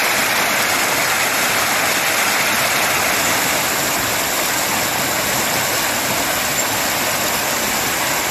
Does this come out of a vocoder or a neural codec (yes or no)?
no